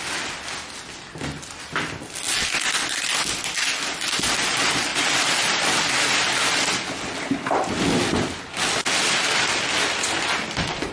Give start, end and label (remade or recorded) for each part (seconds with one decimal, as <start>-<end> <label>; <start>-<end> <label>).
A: 0.0-10.9 recorded